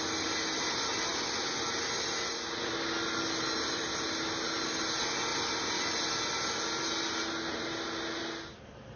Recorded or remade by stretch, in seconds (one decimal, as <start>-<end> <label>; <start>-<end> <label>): 0.0-9.0 recorded